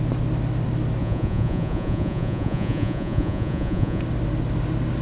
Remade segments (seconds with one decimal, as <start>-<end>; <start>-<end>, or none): 1.0-4.0